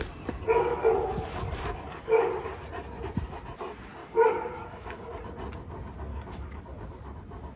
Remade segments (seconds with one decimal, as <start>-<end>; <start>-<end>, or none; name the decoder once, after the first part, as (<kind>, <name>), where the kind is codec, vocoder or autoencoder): 0.7-2.3 (codec, DAC); 4.0-5.1; 6.1-6.6